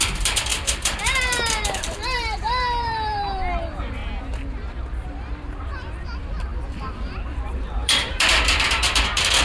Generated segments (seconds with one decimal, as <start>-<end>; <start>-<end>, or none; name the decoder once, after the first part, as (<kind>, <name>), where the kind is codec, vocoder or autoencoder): 0.0-4.0 (vocoder, BigVGAN v2); 5.6-6.5; 7.4-9.4